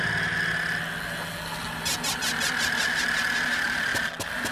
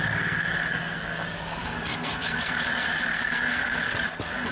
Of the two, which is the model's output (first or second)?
second